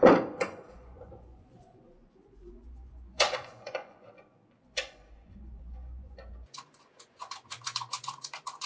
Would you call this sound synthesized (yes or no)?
yes